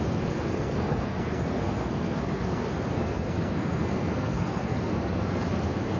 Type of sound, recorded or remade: remade